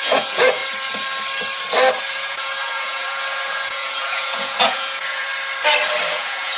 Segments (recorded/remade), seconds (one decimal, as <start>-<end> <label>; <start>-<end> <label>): 0.0-0.6 remade; 0.6-2.0 recorded; 2.0-5.3 remade; 5.3-6.1 recorded; 6.1-6.6 remade